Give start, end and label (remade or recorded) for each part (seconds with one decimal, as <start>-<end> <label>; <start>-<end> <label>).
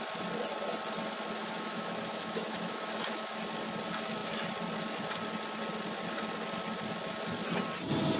0.0-1.4 recorded; 1.4-3.4 remade; 3.4-8.2 recorded